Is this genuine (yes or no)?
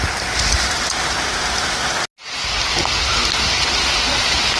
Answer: yes